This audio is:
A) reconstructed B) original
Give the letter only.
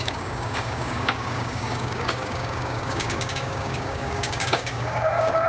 A